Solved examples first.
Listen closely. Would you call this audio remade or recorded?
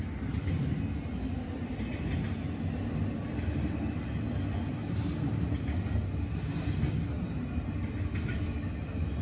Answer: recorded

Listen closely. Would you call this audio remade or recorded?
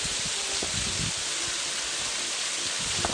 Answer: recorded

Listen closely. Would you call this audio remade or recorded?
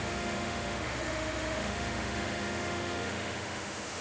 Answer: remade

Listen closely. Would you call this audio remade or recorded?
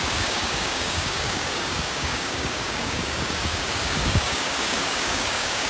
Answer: remade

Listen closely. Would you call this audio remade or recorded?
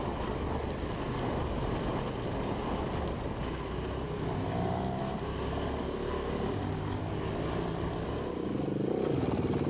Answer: recorded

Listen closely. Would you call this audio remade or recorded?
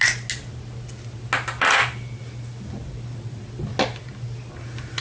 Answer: recorded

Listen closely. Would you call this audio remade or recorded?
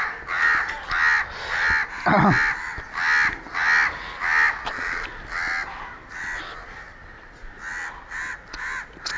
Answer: recorded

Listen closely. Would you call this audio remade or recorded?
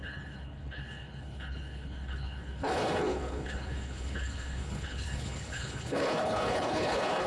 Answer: remade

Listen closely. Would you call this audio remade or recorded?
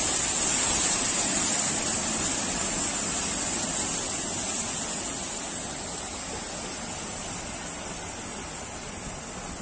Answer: recorded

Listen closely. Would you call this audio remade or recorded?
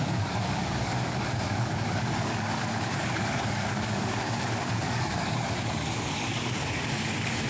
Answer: remade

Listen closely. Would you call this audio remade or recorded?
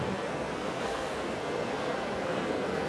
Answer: remade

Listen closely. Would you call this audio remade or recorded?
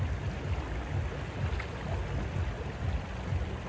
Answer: recorded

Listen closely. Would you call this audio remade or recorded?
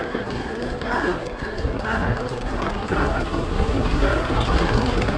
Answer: remade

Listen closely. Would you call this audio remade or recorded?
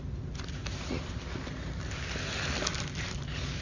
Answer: recorded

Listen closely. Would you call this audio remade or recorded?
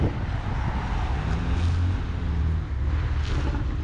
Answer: recorded